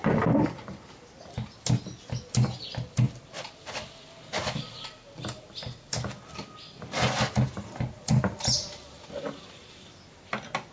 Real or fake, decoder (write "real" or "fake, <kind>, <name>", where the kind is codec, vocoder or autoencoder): real